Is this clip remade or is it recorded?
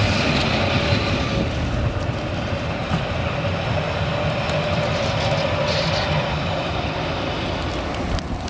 recorded